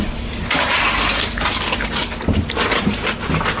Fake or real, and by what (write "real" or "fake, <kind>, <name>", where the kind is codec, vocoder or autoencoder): real